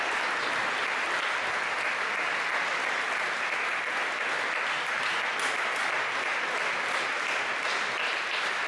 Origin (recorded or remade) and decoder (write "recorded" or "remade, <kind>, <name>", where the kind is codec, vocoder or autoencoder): recorded